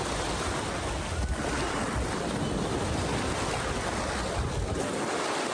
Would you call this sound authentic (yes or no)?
yes